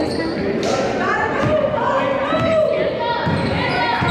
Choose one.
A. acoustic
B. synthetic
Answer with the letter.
A